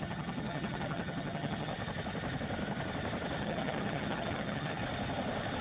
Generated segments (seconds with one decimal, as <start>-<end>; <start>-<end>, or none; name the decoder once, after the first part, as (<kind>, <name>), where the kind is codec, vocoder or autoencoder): 0.0-1.7 (vocoder, HiFi-GAN); 3.4-4.8